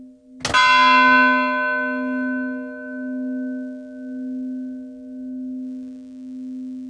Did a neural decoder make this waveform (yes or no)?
no